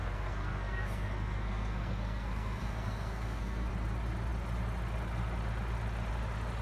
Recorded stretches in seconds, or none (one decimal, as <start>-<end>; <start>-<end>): 3.7-6.6